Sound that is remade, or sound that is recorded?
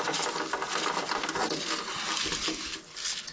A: recorded